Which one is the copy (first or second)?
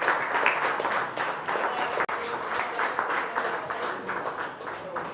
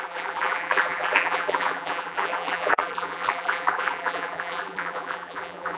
second